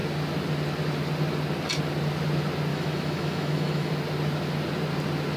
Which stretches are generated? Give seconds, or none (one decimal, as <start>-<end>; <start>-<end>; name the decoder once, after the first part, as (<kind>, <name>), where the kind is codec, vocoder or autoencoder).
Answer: 2.7-3.9 (autoencoder, DAC-VAE)